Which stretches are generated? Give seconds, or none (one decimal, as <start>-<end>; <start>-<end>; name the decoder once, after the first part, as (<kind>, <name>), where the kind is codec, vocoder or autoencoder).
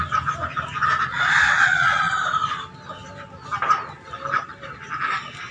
1.1-2.1 (vocoder, Vocos)